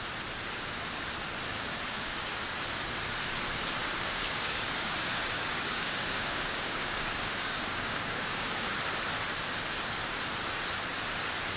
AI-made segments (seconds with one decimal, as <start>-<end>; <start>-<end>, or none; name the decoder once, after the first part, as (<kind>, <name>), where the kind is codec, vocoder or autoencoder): 1.5-2.3 (codec, DAC); 3.8-8.8